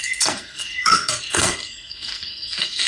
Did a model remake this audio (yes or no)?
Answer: yes